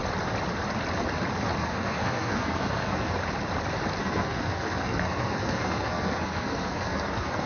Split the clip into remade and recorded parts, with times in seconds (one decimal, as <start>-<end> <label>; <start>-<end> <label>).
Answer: 0.0-1.6 recorded; 1.6-3.1 remade; 3.1-4.0 recorded; 4.0-7.5 remade